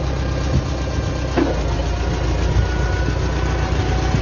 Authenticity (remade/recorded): recorded